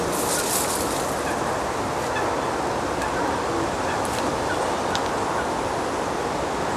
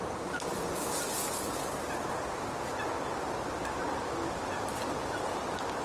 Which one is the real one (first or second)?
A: first